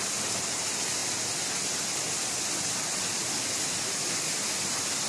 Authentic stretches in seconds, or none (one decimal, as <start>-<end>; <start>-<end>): 0.0-5.1